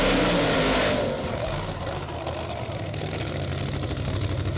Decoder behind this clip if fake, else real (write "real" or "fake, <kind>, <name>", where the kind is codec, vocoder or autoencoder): real